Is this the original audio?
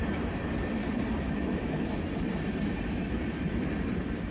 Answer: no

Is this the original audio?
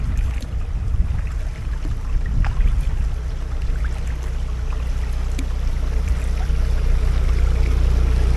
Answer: yes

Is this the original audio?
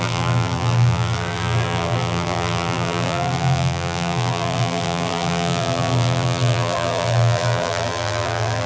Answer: no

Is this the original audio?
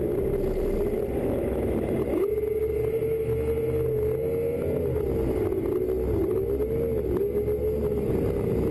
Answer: yes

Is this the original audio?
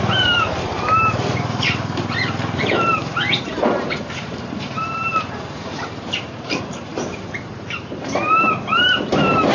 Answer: no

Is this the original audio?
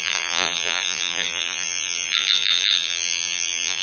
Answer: no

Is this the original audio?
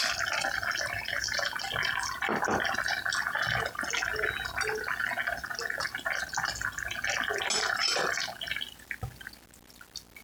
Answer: yes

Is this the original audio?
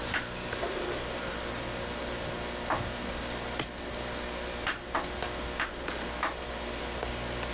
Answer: yes